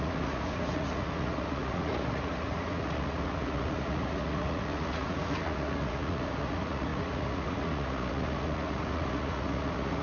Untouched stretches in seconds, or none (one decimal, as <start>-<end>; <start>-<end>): none